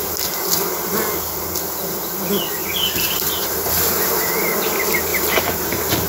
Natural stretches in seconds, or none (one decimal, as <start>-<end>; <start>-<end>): 0.0-2.6; 4.3-5.1; 5.6-6.1